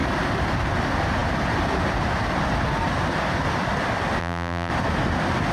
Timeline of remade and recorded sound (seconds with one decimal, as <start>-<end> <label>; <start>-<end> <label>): 0.0-4.2 recorded; 4.2-4.7 remade; 4.7-5.5 recorded